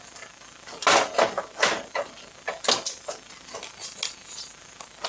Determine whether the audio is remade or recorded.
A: recorded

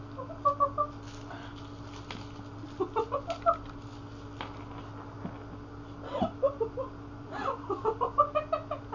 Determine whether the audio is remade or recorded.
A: recorded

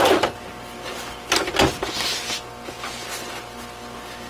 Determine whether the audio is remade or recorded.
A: recorded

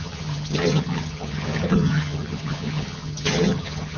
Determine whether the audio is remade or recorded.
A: remade